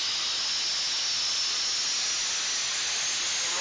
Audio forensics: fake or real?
real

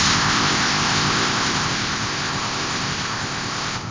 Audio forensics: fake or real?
fake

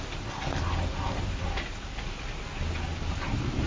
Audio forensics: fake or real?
real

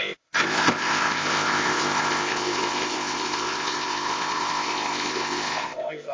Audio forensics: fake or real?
fake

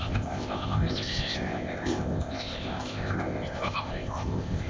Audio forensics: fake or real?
fake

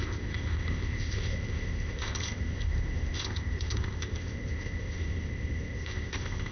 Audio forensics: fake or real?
fake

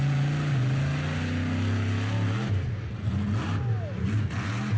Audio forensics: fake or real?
real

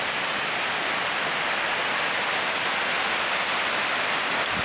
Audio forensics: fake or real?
real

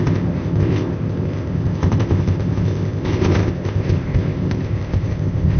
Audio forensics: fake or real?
fake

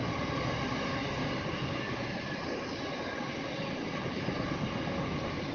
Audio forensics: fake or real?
real